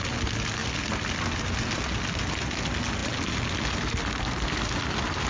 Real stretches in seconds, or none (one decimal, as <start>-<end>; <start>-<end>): 0.0-5.3